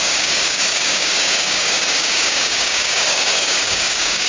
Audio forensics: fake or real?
fake